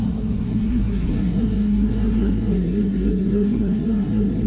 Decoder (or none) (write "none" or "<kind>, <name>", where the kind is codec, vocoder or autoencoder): codec, SNAC